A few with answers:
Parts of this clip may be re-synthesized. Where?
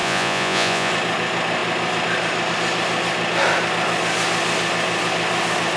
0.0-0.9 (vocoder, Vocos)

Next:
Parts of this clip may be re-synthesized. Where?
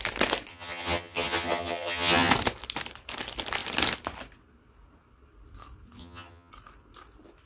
0.5-2.3 (vocoder, HiFi-GAN); 6.0-6.5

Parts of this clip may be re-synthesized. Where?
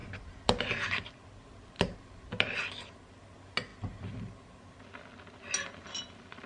none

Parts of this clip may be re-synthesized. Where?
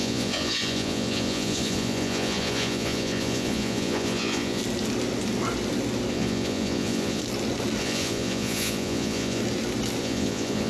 0.0-4.6 (vocoder, Vocos); 6.1-7.2; 7.8-9.4; 10.0-10.7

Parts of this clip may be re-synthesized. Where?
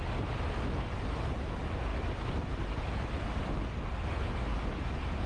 none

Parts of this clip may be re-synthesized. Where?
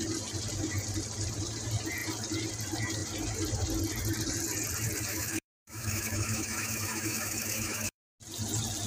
5.1-8.1 (autoencoder, DAC-VAE)